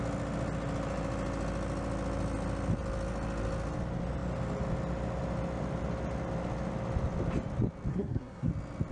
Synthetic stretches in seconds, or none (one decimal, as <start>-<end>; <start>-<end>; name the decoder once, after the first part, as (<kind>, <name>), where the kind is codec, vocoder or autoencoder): 7.9-8.5 (codec, SNAC)